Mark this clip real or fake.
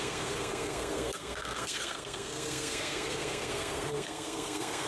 fake